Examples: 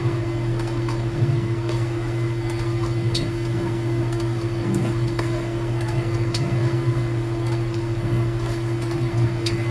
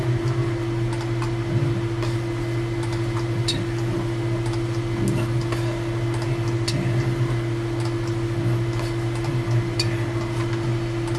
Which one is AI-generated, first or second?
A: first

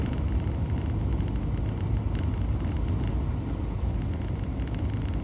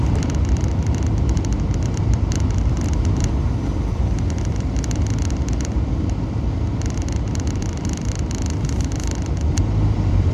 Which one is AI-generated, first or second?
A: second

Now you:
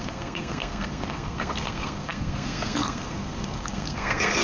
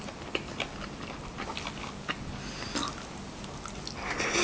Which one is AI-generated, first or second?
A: first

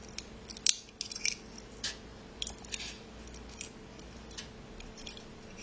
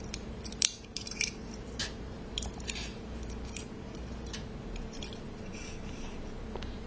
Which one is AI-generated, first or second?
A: second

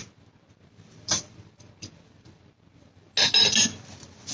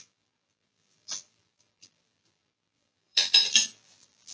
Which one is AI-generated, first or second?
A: second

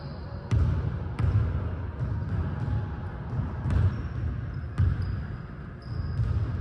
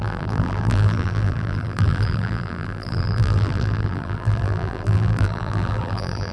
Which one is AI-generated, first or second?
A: second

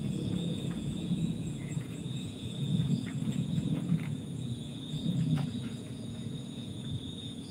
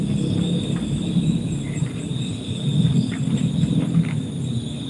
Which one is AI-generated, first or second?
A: first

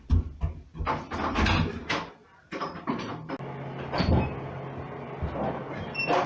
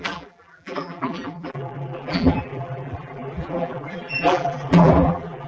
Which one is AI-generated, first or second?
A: second